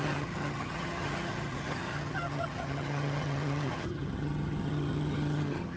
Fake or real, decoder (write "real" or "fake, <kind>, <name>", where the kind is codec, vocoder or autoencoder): fake, vocoder, HiFi-GAN